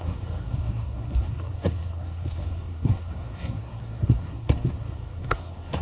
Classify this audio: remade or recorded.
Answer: remade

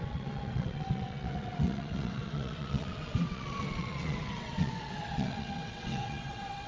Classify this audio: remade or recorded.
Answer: remade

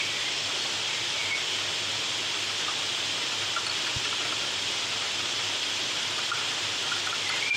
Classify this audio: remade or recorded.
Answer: recorded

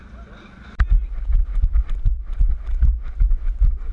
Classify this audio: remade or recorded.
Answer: recorded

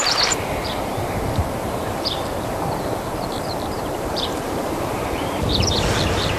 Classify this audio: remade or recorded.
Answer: remade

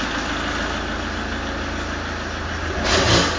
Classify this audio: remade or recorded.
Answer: recorded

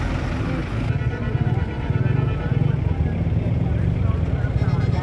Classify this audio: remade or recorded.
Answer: recorded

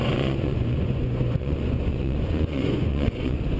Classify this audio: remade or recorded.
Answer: remade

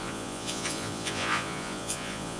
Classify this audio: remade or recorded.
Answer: remade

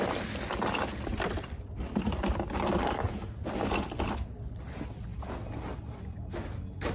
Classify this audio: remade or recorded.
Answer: recorded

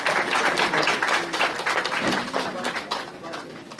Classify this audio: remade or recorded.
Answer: recorded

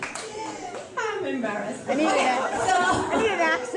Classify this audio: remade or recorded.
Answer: recorded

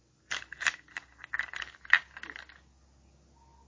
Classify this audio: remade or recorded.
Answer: recorded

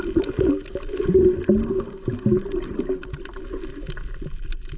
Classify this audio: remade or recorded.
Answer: recorded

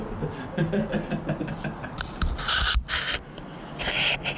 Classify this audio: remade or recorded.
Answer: recorded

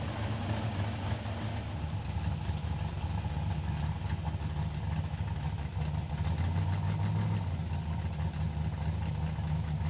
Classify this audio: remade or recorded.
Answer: recorded